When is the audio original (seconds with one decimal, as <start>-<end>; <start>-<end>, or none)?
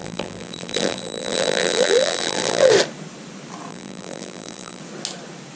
2.7-3.7; 4.8-5.6